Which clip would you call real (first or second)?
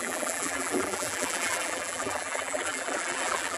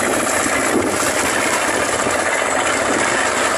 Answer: second